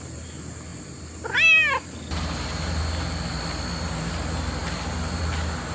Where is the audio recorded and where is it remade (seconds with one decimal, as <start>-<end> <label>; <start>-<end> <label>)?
0.0-5.7 recorded